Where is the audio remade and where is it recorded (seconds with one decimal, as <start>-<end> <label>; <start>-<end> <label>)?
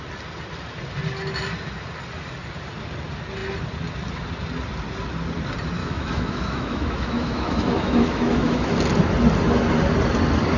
0.0-5.8 recorded; 5.8-8.7 remade; 8.7-10.6 recorded